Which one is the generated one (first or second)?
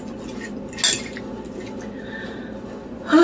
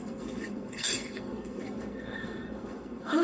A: second